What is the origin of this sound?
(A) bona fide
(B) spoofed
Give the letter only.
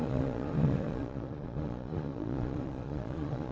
B